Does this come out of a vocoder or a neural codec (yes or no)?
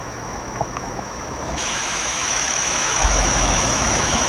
yes